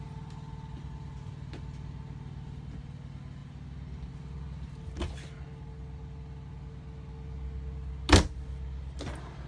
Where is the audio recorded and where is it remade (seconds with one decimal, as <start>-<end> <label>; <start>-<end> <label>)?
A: 0.0-9.5 recorded